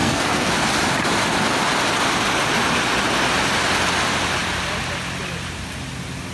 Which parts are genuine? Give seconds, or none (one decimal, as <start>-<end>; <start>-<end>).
0.5-6.3